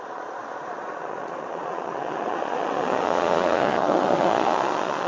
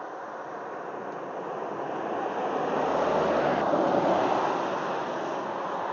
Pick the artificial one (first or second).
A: first